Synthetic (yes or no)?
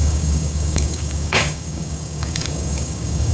yes